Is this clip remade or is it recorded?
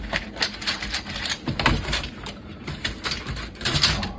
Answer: remade